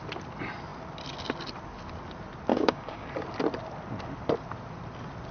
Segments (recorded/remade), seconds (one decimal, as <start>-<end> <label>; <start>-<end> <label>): 0.0-2.5 recorded; 2.5-3.1 remade; 3.1-5.3 recorded